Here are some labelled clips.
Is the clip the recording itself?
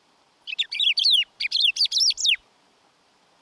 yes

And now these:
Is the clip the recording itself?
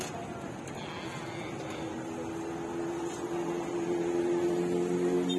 yes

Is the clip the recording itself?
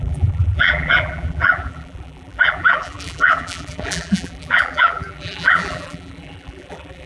no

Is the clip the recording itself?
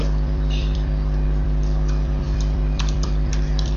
no